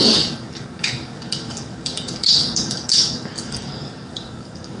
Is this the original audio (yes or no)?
no